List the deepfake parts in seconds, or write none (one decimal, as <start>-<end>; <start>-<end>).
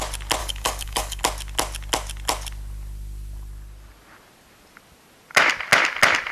0.4-1.2